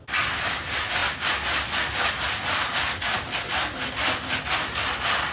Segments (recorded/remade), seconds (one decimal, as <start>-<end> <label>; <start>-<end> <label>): 0.0-5.3 recorded